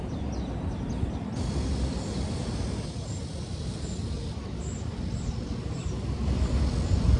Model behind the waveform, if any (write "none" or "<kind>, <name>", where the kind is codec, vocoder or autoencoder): none